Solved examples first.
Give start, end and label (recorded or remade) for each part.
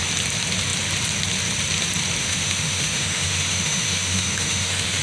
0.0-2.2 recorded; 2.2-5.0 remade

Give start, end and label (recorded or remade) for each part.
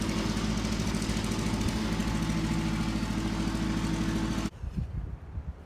0.0-5.7 recorded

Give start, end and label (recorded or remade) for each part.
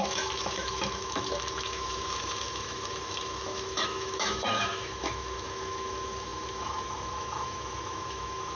0.0-8.6 remade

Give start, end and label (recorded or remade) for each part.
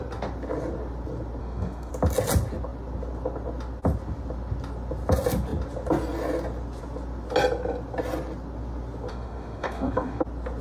0.0-1.4 recorded; 1.4-1.9 remade; 1.9-9.1 recorded; 9.1-10.2 remade; 10.2-10.6 recorded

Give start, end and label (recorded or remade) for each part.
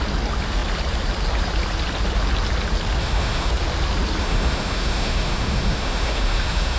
0.0-3.0 recorded; 3.0-3.5 remade; 3.5-4.2 recorded; 4.2-6.8 remade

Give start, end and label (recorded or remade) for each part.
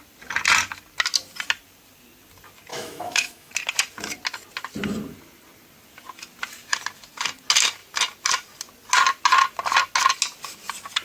0.0-2.7 recorded; 2.7-3.5 remade; 3.5-11.0 recorded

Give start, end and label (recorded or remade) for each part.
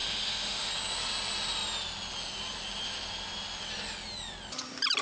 0.0-0.7 remade; 0.7-5.0 recorded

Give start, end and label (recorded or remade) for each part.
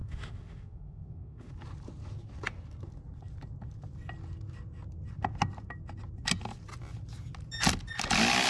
0.0-1.5 remade; 1.5-8.5 recorded